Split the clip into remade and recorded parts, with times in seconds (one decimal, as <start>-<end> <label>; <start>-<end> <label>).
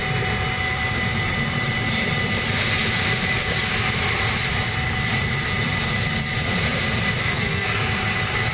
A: 0.0-7.2 recorded; 7.2-7.8 remade; 7.8-8.5 recorded